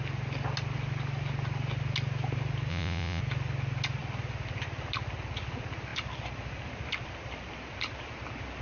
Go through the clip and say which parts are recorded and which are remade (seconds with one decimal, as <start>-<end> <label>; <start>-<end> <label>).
0.0-2.7 recorded; 2.7-3.2 remade; 3.2-8.6 recorded